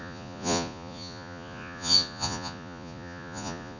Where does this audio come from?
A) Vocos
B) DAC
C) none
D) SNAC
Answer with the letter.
A